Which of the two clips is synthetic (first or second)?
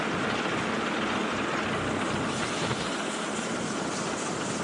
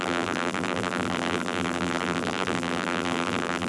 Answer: second